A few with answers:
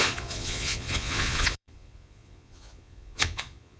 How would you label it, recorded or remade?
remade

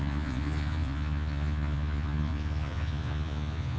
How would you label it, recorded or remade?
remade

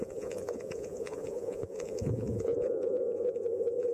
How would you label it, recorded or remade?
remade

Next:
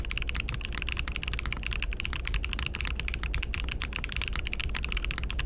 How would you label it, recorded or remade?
recorded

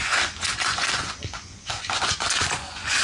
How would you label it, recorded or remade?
remade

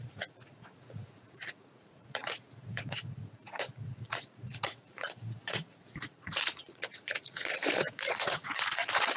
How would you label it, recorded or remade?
remade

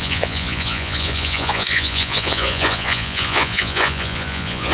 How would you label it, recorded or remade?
remade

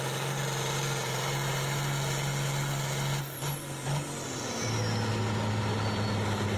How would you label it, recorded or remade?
recorded